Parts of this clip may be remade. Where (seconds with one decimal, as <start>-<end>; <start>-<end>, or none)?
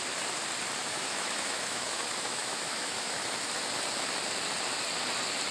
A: 0.9-3.4